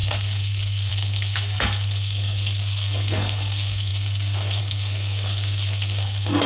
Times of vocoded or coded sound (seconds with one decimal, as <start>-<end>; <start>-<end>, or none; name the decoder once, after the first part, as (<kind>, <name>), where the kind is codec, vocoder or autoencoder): 0.0-6.5 (codec, SNAC)